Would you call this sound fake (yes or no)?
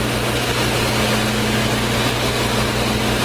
no